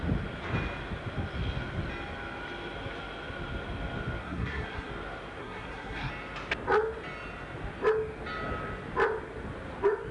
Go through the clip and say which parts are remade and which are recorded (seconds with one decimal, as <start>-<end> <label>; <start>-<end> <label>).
0.0-4.2 recorded; 4.2-4.9 remade; 4.9-5.4 recorded; 5.4-6.1 remade; 6.1-10.1 recorded